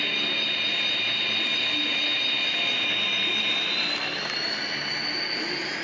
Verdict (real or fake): real